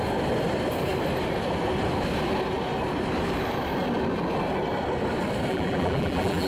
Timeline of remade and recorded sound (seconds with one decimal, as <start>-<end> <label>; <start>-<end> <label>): 0.0-5.5 recorded; 5.5-6.5 remade